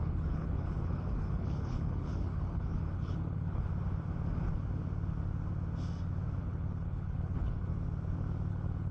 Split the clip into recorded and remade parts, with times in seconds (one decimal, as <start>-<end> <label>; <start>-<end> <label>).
0.0-3.7 remade; 3.7-6.4 recorded; 6.4-7.7 remade; 7.7-8.5 recorded; 8.5-8.9 remade